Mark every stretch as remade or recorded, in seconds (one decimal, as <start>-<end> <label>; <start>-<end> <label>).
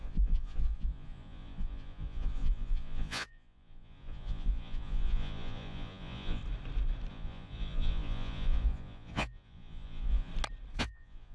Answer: 0.0-6.4 remade; 6.4-7.1 recorded; 7.1-10.3 remade; 10.3-10.8 recorded; 10.8-11.3 remade